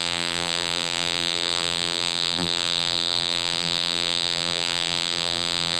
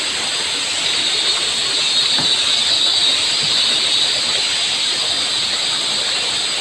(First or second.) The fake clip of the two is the first